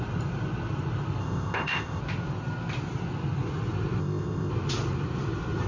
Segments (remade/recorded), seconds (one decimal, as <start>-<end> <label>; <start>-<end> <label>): 0.0-1.2 recorded; 1.2-2.0 remade; 2.0-4.0 recorded; 4.0-4.5 remade; 4.5-5.7 recorded